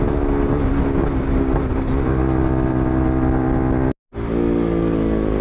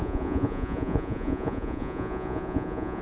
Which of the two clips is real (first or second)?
first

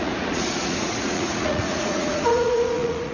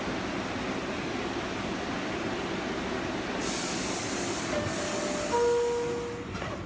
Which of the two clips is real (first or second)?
second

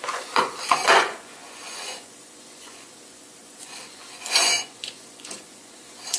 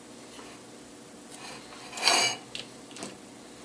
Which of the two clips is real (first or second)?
second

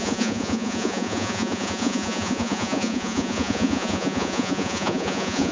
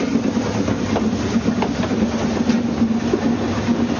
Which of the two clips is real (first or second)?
second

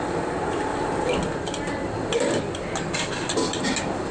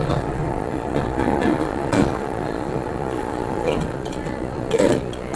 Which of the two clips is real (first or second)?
first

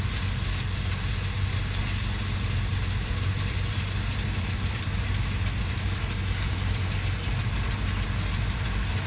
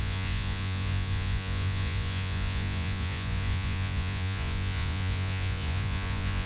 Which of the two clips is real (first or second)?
first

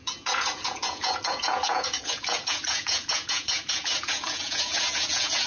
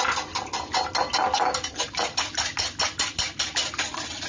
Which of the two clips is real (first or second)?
second